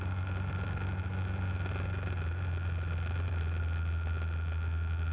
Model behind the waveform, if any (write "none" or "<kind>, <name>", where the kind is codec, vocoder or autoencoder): none